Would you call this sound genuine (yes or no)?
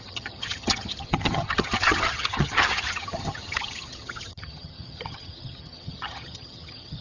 no